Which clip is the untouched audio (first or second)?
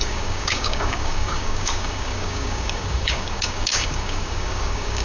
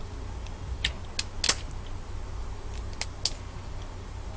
second